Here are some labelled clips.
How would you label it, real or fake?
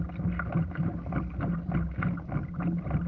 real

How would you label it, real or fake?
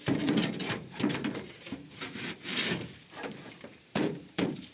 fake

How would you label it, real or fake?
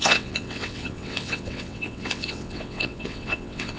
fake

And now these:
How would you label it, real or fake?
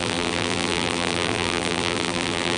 fake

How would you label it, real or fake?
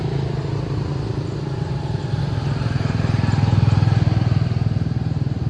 real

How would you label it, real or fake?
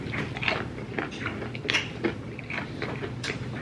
real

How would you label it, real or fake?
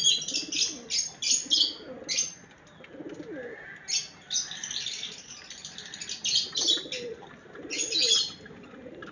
real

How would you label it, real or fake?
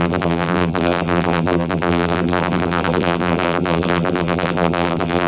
fake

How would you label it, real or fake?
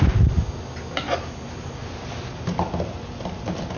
real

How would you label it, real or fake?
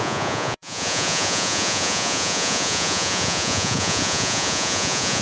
fake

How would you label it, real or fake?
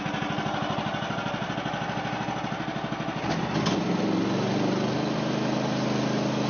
real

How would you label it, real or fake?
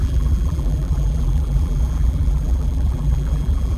fake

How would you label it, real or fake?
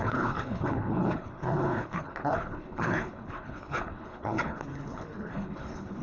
fake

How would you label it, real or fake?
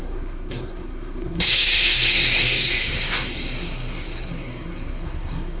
fake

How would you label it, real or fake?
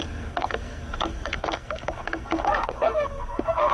fake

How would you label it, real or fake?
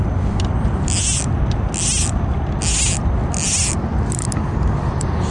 real